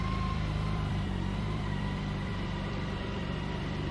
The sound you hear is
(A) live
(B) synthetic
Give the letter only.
B